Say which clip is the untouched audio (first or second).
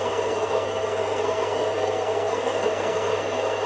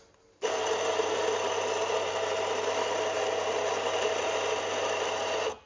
second